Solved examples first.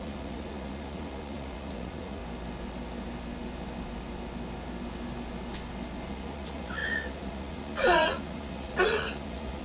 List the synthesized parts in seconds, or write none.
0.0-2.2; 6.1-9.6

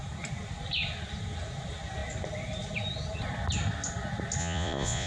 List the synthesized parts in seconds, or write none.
4.4-5.1